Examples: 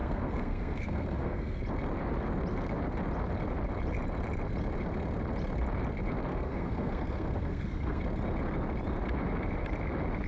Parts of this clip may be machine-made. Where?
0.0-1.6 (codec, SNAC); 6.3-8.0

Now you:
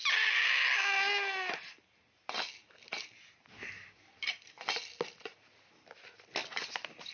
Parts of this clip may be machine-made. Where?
none

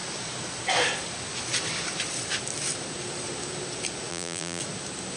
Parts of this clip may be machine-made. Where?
4.1-4.6 (vocoder, BigVGAN v2)